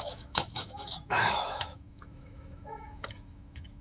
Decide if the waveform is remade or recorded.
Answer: remade